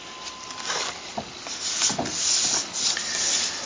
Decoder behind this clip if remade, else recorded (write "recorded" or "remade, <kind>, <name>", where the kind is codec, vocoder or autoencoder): recorded